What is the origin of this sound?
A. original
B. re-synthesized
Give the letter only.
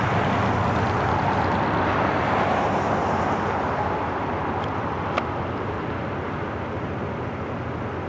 A